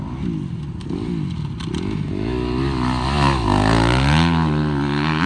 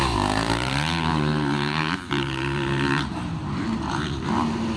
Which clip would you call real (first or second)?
first